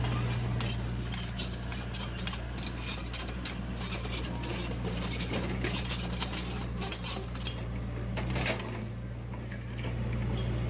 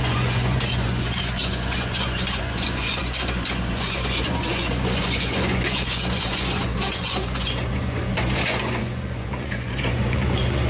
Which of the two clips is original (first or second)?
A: first